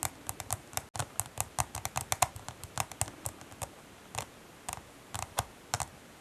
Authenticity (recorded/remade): recorded